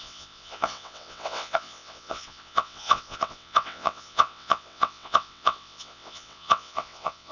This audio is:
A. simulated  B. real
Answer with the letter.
A